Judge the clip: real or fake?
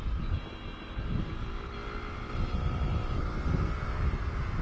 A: real